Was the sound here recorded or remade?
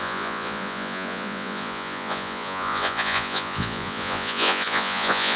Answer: remade